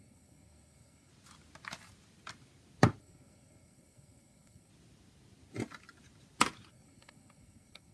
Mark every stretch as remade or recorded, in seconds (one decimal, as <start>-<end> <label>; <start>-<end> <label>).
0.0-1.1 remade; 1.1-3.0 recorded; 3.0-4.7 remade; 4.7-6.7 recorded; 6.7-7.9 remade